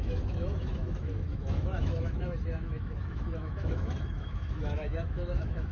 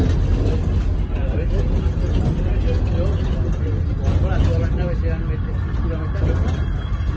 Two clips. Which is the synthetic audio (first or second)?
first